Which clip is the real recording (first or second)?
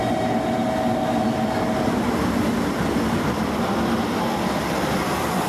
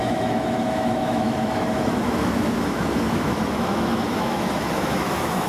first